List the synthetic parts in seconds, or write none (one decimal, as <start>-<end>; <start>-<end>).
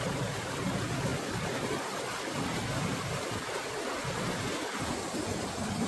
none